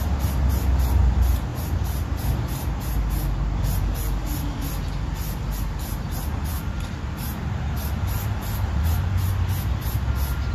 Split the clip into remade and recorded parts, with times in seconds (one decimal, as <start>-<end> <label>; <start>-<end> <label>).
0.0-10.5 recorded